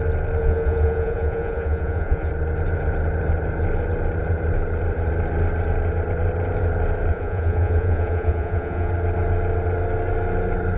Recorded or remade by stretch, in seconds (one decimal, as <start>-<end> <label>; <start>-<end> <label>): 0.0-0.4 recorded; 0.4-2.3 remade; 2.3-7.1 recorded; 7.1-8.9 remade; 8.9-10.8 recorded